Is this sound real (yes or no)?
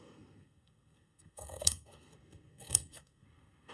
no